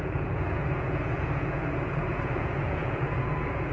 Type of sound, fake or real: fake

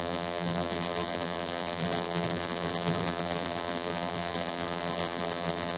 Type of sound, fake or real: fake